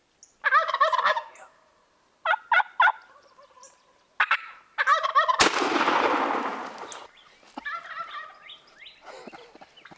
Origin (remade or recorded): recorded